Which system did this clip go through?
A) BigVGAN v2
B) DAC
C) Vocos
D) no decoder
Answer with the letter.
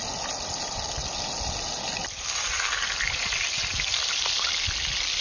D